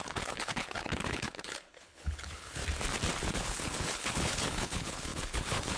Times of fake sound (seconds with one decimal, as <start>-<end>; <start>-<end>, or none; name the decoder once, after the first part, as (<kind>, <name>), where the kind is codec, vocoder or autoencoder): 0.0-2.6 (codec, HILCodec); 3.2-5.8

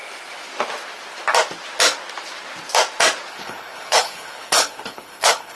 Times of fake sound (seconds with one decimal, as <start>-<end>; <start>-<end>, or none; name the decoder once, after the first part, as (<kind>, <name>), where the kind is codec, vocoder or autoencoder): 3.3-5.5 (codec, HILCodec)